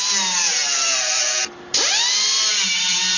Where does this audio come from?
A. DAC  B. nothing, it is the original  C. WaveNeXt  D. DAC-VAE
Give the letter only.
B